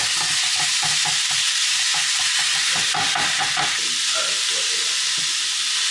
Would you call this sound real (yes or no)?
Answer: yes